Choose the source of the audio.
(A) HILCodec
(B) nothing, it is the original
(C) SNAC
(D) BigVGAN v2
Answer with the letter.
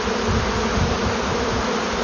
B